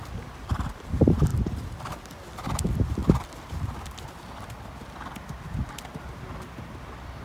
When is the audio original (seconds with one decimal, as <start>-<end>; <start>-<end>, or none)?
0.0-7.2